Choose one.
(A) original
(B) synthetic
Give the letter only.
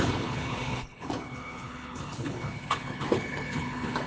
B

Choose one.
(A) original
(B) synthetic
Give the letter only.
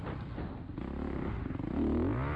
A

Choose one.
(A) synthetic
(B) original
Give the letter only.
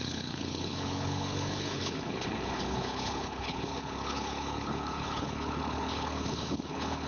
A